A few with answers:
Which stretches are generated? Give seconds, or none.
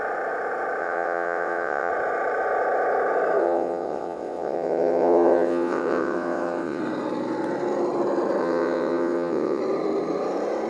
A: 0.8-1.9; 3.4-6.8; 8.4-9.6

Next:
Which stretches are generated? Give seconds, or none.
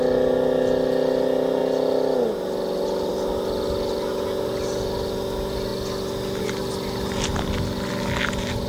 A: none